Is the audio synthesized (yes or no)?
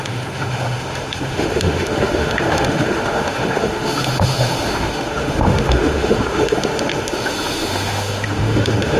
yes